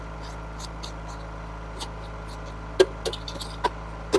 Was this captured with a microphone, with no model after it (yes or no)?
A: yes